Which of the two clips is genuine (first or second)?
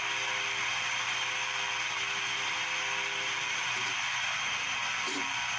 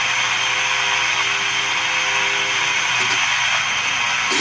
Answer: second